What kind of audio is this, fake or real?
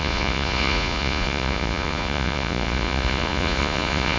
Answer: fake